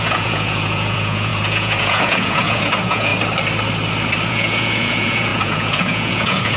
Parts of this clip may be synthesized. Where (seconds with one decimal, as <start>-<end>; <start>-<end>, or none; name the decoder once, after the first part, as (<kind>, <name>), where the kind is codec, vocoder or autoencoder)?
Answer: 0.0-3.1 (vocoder, Vocos); 4.3-6.6

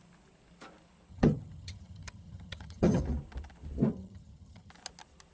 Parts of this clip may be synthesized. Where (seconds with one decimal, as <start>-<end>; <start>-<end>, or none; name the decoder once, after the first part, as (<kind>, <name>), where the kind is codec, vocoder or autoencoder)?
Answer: 1.1-3.0 (vocoder, HiFi-GAN); 3.9-4.7

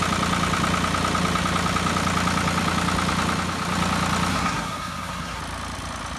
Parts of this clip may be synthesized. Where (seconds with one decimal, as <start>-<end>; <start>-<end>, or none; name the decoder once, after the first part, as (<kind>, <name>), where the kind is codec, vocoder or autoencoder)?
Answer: 4.3-5.4 (codec, SNAC)

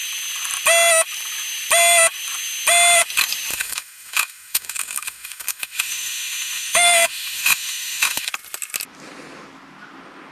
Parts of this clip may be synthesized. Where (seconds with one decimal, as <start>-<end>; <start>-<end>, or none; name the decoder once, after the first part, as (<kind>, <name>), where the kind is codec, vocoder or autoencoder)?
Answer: 3.5-8.3 (autoencoder, DAC-VAE)

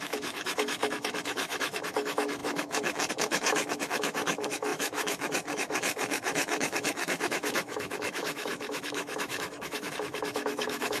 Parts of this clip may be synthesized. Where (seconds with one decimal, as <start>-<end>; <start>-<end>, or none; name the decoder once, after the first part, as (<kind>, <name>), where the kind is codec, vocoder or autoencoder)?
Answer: 0.0-11.0 (autoencoder, DAC-VAE)

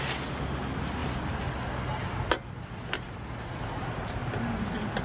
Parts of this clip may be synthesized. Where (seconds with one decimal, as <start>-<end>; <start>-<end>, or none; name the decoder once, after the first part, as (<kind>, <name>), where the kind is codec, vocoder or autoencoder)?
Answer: none